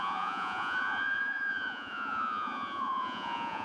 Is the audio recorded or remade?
remade